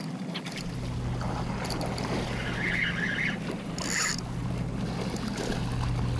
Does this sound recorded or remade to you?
recorded